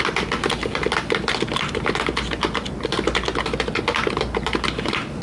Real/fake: real